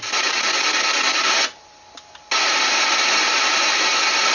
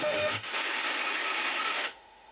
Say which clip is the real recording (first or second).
first